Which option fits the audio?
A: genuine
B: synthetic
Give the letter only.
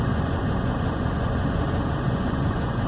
B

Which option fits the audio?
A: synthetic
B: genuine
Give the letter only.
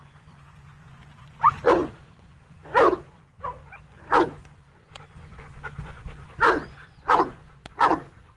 A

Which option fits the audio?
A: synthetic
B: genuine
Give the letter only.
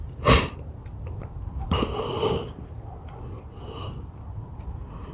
A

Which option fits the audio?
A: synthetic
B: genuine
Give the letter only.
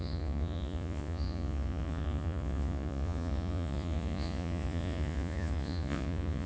A